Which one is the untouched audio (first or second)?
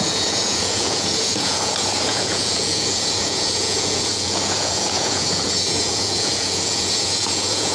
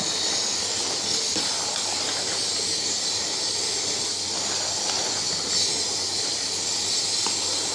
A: second